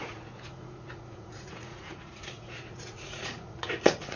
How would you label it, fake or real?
fake